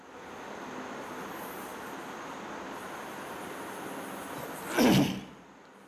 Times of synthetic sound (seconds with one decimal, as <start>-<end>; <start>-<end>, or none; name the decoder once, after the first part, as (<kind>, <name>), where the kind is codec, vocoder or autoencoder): none